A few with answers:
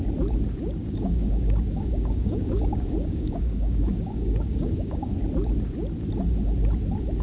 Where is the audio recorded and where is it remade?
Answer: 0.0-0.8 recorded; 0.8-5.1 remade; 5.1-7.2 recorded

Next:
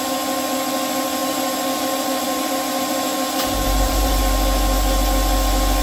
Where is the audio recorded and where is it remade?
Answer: 0.0-1.2 recorded; 1.2-4.2 remade; 4.2-5.8 recorded

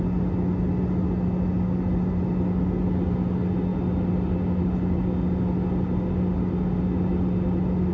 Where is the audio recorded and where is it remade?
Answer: 0.0-7.9 recorded